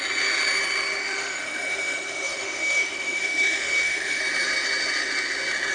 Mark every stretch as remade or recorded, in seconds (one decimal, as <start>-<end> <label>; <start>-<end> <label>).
0.0-1.0 recorded; 1.0-4.2 remade; 4.2-5.7 recorded